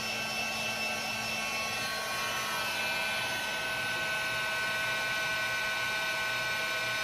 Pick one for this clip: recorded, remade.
recorded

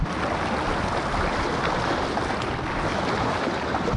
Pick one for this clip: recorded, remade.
recorded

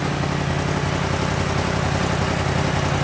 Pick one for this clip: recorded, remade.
recorded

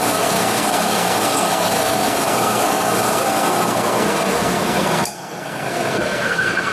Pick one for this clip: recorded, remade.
remade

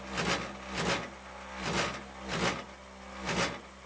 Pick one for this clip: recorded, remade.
recorded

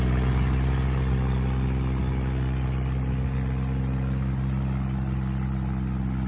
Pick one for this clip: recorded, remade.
recorded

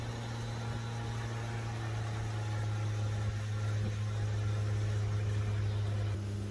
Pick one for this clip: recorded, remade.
recorded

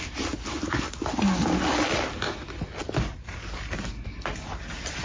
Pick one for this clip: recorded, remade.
recorded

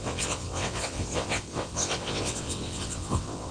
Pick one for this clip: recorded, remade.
remade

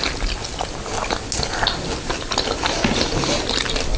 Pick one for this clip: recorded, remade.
recorded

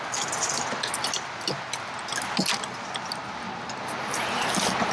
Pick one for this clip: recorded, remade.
recorded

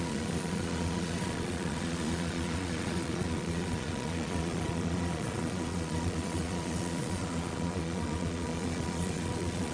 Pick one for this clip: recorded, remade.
remade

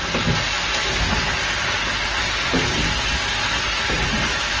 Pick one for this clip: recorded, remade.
recorded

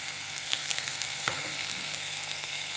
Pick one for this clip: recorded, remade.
remade